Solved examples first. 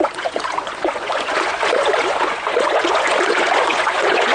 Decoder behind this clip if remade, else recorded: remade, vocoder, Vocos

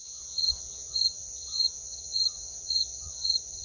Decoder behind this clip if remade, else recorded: remade, vocoder, Vocos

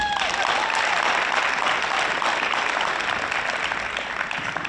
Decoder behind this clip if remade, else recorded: recorded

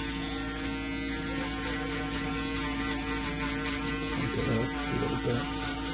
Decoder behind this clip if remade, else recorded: recorded